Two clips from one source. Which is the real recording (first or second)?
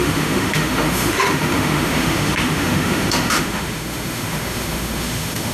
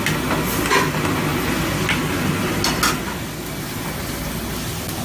second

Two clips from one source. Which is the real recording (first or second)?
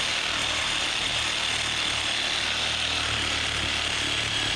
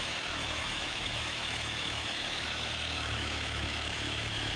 first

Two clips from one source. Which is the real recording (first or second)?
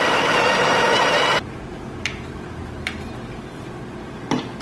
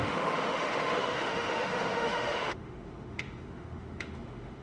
first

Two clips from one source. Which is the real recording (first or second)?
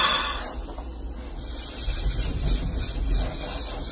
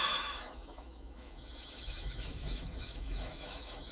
first